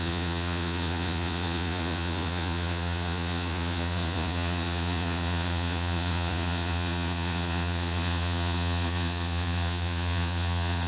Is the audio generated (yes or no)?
yes